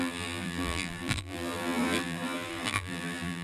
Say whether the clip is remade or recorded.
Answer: remade